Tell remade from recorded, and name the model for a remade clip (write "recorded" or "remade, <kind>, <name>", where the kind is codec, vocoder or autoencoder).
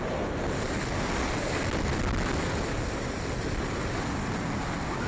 recorded